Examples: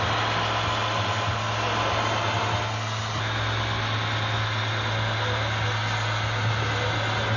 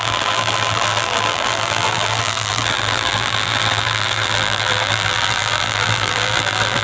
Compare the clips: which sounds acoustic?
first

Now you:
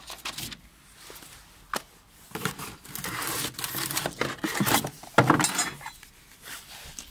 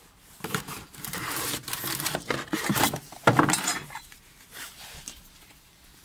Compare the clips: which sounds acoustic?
first